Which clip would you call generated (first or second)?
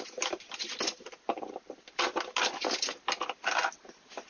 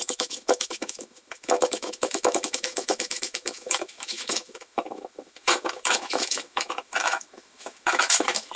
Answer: second